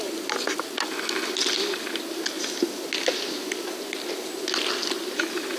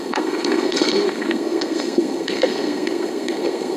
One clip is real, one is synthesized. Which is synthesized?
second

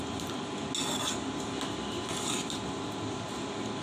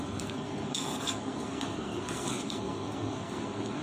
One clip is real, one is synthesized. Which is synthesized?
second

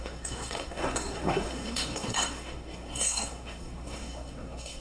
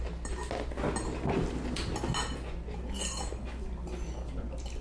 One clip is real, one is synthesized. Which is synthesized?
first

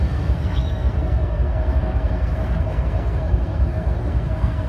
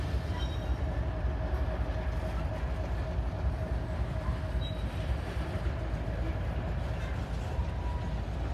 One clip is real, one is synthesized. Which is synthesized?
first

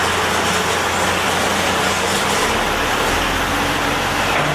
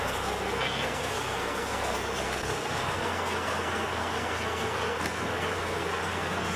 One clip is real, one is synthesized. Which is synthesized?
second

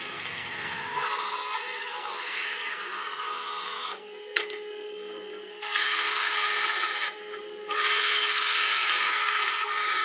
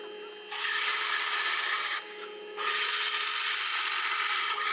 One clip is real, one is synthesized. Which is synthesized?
first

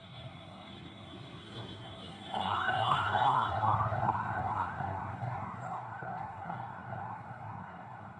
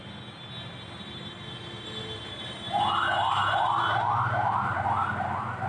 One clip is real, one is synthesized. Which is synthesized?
first